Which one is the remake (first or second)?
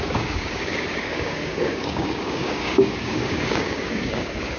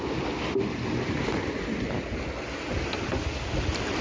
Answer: first